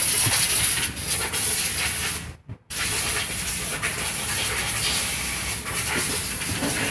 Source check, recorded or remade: recorded